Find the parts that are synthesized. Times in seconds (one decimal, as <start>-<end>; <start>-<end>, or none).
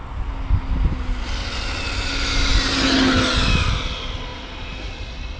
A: 4.3-4.9